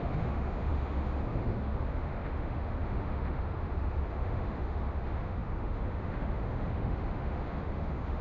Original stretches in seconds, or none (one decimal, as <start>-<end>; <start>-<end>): none